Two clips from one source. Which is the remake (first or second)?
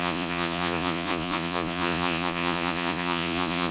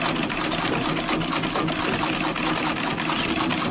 first